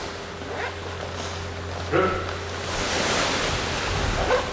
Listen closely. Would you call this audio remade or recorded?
recorded